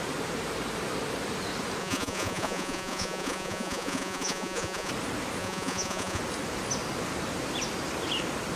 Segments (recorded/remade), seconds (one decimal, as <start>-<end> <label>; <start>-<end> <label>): 0.0-1.8 recorded; 1.8-4.9 remade; 4.9-5.4 recorded; 5.4-6.2 remade; 6.2-8.6 recorded